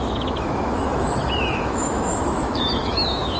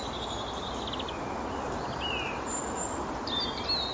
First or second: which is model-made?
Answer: first